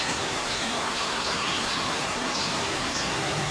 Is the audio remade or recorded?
remade